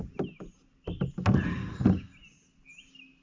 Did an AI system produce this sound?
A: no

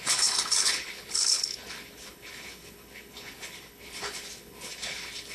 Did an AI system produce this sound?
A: yes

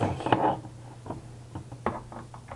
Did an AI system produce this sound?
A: no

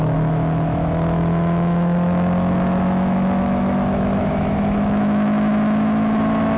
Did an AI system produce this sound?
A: yes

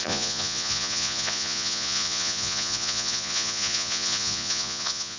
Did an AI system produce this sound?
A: yes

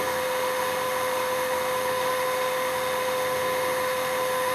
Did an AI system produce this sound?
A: yes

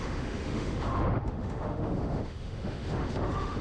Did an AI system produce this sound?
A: yes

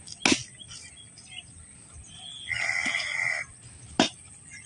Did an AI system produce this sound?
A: no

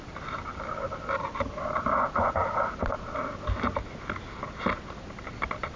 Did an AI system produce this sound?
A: no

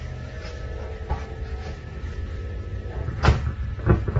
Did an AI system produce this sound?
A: no